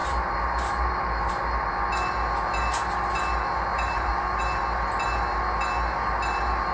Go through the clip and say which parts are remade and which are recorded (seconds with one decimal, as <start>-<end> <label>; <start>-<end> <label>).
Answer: 0.0-1.3 remade; 1.3-3.7 recorded; 3.7-4.4 remade; 4.4-6.7 recorded